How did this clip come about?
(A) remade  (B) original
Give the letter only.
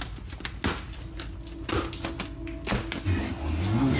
B